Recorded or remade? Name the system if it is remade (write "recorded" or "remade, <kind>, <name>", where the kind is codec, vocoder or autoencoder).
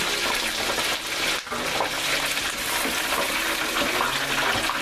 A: recorded